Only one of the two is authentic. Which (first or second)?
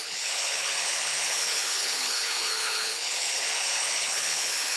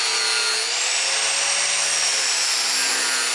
second